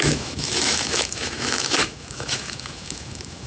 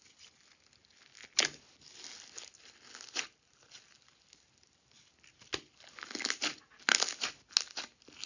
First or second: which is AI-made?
first